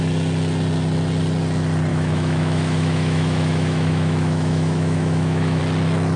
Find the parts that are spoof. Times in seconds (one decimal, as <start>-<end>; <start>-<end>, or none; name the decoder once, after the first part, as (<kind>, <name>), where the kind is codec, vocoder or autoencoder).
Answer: 1.9-5.6 (autoencoder, DAC-VAE)